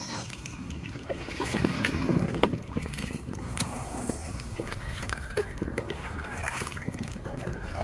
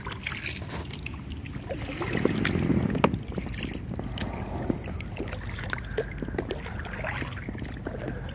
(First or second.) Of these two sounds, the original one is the second